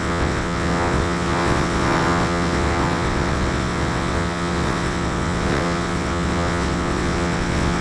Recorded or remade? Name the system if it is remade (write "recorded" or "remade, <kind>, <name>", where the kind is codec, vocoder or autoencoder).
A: remade, vocoder, WaveNeXt